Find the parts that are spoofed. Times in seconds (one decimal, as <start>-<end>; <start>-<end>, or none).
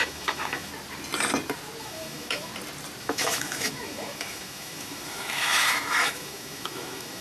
0.0-0.7; 1.8-2.5; 3.0-7.2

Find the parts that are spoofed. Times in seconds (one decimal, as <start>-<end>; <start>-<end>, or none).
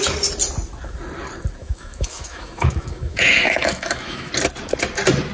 1.6-4.3